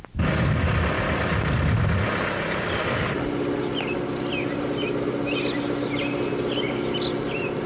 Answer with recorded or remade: recorded